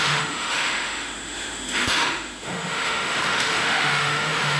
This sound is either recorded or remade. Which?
remade